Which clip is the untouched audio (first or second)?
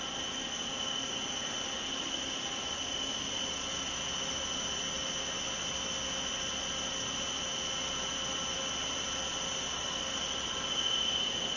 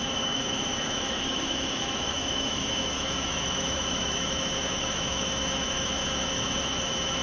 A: first